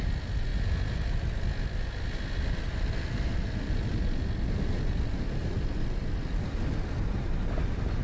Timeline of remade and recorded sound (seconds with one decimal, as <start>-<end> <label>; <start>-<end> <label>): 0.0-8.0 recorded